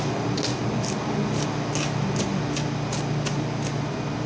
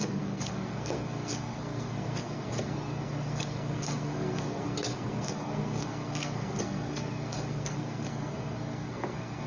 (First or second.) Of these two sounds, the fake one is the second